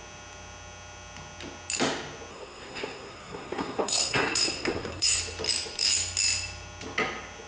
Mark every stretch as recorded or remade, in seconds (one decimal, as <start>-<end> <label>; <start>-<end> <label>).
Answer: 0.0-2.3 recorded; 2.3-5.2 remade; 5.2-7.5 recorded